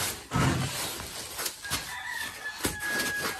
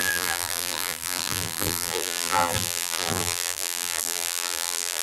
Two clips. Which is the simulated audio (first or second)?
second